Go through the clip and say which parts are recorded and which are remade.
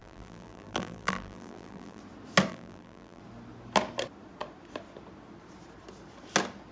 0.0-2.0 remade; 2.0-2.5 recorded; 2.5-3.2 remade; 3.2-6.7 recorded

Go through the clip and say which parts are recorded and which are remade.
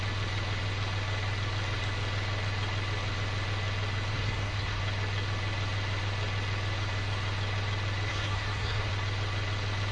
0.0-4.1 recorded; 4.1-4.8 remade; 4.8-8.1 recorded; 8.1-8.9 remade; 8.9-9.9 recorded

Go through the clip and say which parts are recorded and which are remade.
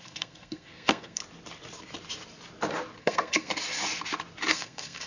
0.0-1.2 remade; 1.2-3.0 recorded; 3.0-3.5 remade; 3.5-4.5 recorded; 4.5-5.1 remade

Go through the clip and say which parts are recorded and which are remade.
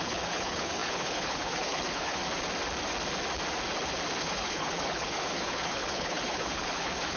0.0-2.2 remade; 2.2-4.2 recorded; 4.2-7.2 remade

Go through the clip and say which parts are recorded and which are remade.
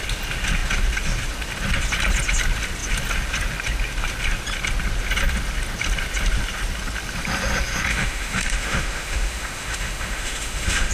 0.0-7.9 recorded; 7.9-10.9 remade